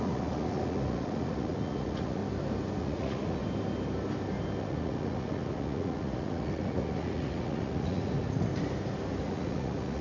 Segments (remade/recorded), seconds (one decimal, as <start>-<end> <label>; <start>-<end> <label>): 0.0-2.2 remade; 2.2-2.8 recorded; 2.8-3.4 remade; 3.4-4.6 recorded; 4.6-8.5 remade; 8.5-9.2 recorded; 9.2-10.0 remade